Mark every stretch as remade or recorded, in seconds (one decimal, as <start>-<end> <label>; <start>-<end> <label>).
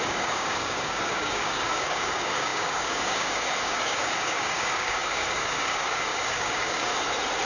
0.0-6.9 remade; 6.9-7.5 recorded